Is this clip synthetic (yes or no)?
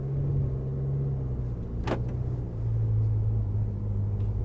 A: no